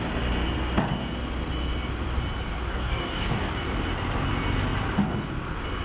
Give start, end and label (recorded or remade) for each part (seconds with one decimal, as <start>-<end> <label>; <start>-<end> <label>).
0.0-2.7 recorded; 2.7-3.5 remade; 3.5-5.8 recorded